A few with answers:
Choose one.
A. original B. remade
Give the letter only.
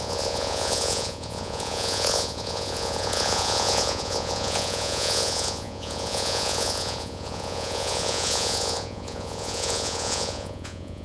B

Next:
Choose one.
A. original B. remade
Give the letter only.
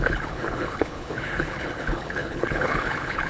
B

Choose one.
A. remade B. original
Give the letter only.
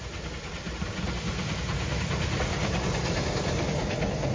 B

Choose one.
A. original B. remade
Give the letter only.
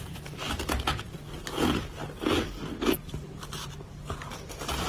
A